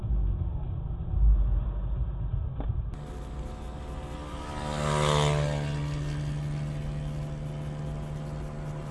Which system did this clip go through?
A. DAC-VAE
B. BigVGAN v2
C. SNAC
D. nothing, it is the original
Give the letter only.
D